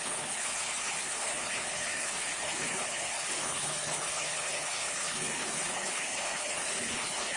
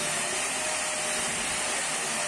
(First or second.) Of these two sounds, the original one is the second